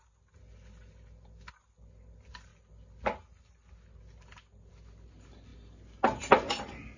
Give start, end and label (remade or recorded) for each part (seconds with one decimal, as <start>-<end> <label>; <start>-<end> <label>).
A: 0.0-7.0 recorded

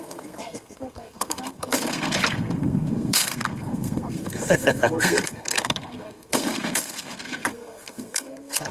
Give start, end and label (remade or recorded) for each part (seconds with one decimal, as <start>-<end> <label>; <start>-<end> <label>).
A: 0.0-8.7 remade

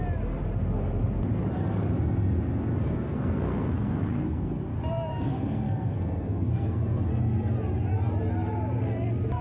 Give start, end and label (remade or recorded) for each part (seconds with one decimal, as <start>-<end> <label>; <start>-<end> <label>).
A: 0.0-2.8 recorded; 2.8-4.6 remade; 4.6-5.1 recorded; 5.1-7.1 remade; 7.1-9.4 recorded

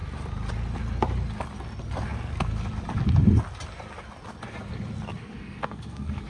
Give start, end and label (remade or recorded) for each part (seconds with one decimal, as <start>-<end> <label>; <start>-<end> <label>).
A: 0.0-5.2 recorded; 5.2-6.3 remade

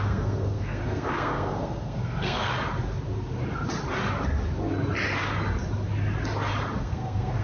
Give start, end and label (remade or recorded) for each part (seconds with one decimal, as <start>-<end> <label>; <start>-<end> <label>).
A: 0.0-2.5 remade; 2.5-6.8 recorded; 6.8-7.4 remade

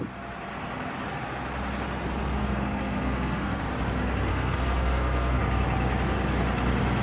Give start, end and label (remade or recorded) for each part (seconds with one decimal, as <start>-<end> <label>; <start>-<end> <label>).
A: 0.0-2.4 recorded; 2.4-3.6 remade; 3.6-4.3 recorded; 4.3-5.4 remade; 5.4-7.0 recorded

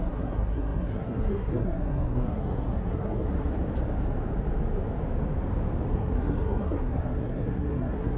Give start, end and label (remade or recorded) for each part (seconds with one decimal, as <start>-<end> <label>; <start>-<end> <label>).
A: 0.0-3.5 remade; 3.5-5.9 recorded; 5.9-8.2 remade